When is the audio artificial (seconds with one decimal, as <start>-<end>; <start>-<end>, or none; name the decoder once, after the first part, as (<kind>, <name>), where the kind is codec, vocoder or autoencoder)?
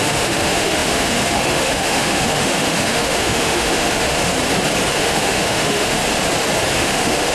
0.0-4.3 (autoencoder, DAC-VAE); 4.9-6.0; 6.8-7.3